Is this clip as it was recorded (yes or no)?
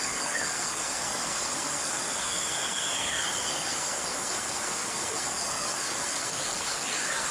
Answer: no